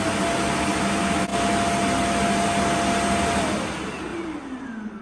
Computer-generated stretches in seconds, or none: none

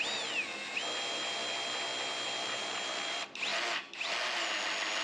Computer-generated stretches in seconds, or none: none

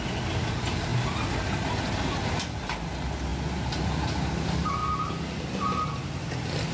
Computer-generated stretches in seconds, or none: none

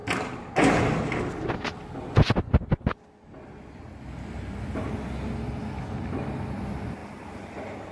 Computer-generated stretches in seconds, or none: none

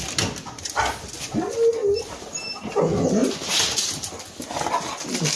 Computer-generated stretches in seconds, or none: none

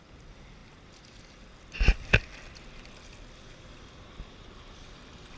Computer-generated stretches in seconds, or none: none

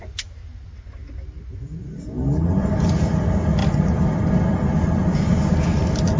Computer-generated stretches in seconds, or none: none